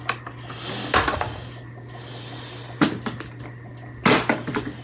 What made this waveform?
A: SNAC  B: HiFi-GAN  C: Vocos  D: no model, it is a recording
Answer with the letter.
D